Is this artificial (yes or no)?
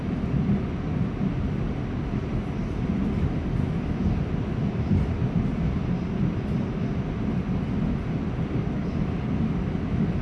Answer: no